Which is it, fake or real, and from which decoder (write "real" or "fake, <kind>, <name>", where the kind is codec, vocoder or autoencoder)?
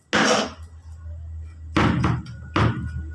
real